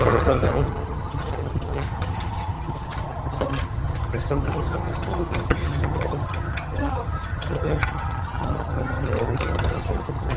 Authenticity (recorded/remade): remade